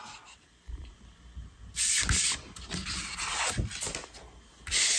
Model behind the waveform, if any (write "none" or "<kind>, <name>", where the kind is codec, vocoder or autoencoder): none